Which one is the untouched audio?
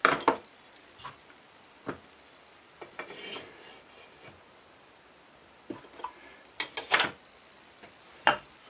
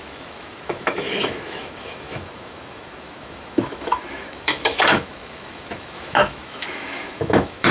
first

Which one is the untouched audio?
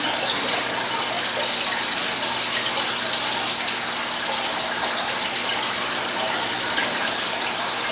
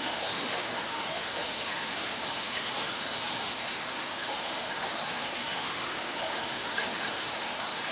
first